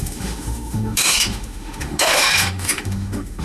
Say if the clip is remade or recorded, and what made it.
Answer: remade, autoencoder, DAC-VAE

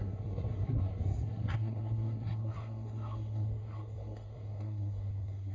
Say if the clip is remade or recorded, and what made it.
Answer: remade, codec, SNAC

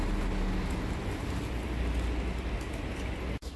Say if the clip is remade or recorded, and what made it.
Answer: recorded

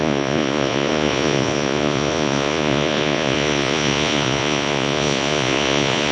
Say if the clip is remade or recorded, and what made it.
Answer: remade, vocoder, Vocos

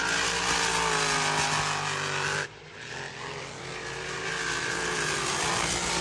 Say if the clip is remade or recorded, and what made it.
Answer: recorded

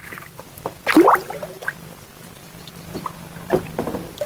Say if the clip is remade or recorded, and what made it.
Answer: remade, vocoder, BigVGAN v2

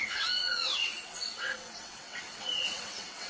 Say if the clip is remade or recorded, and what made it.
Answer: remade, vocoder, WaveNeXt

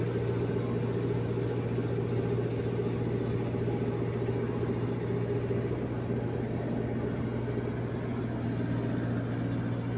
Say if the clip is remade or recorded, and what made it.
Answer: recorded